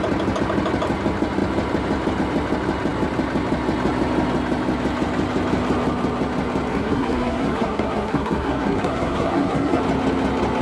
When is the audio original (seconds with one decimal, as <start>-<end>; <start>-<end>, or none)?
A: 0.0-6.7; 9.8-10.6